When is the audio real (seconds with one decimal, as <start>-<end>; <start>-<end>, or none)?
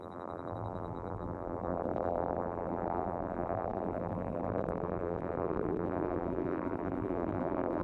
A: none